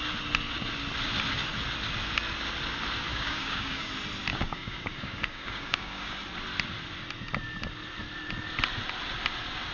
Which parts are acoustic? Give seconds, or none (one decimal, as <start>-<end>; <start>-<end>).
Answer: 0.0-3.1; 3.9-4.3; 6.2-9.7